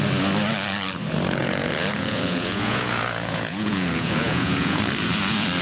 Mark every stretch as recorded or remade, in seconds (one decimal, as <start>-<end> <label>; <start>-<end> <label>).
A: 0.0-1.4 recorded; 1.4-4.8 remade; 4.8-5.6 recorded